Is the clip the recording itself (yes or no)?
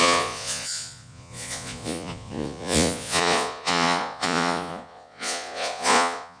no